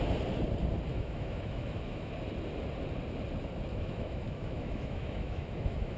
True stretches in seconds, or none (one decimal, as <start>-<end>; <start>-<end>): 0.0-0.9; 2.1-3.7